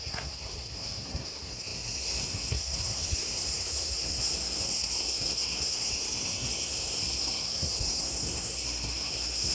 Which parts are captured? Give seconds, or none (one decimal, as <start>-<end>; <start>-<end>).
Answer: none